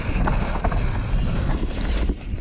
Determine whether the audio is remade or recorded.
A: recorded